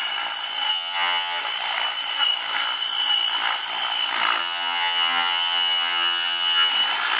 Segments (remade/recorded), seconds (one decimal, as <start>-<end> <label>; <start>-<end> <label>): 0.0-0.7 recorded; 0.7-1.4 remade; 1.4-4.4 recorded; 4.4-6.7 remade; 6.7-7.2 recorded